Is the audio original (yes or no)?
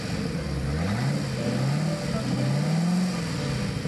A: yes